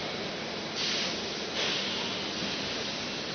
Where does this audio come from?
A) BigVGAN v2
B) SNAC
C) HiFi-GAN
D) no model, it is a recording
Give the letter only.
D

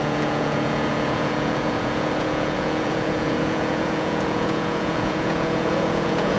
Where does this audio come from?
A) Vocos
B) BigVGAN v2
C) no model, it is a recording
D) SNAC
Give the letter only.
A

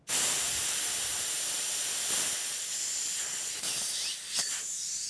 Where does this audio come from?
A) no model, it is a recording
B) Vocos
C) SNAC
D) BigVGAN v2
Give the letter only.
A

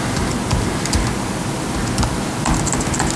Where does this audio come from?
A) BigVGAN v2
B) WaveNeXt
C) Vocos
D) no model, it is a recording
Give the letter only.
D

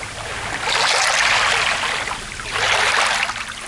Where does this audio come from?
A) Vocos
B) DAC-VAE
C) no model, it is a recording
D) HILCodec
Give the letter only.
C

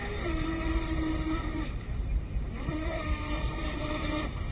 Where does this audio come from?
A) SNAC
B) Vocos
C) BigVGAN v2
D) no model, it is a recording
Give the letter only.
C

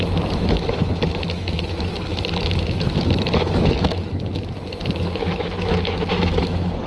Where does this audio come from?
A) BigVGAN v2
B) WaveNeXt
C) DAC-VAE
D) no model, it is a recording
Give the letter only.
C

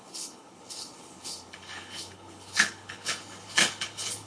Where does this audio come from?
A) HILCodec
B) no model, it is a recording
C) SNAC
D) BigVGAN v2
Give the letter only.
A